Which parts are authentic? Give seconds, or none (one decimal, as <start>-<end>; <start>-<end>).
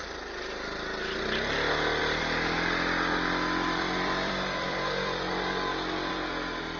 0.0-2.0; 6.1-6.8